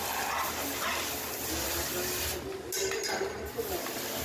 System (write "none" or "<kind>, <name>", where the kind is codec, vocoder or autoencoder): none